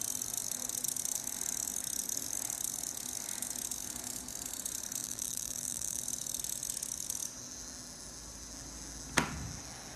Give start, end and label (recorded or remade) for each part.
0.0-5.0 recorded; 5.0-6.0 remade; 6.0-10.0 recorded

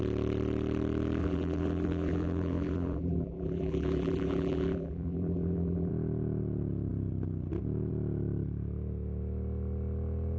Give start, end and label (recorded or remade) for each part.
0.0-1.2 recorded; 1.2-5.9 remade; 5.9-10.4 recorded

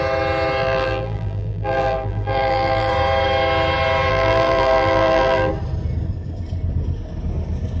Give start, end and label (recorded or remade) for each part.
0.0-0.6 recorded; 0.6-2.9 remade; 2.9-4.1 recorded; 4.1-5.5 remade; 5.5-7.8 recorded

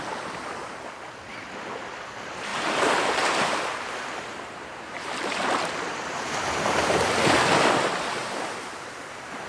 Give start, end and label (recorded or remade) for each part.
0.0-2.5 recorded; 2.5-7.0 remade; 7.0-8.2 recorded; 8.2-9.5 remade

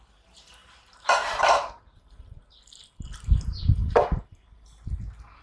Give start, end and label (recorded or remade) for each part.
0.0-0.6 recorded; 0.6-2.4 remade; 2.4-5.4 recorded